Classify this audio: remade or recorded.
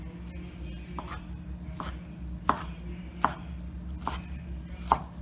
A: recorded